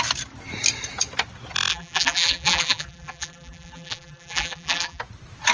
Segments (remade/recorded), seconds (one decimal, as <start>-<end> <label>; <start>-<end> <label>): 0.0-1.7 recorded; 1.7-5.0 remade; 5.0-5.5 recorded